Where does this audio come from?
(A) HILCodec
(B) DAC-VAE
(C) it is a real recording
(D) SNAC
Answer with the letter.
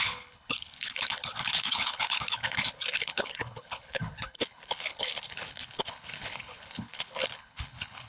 A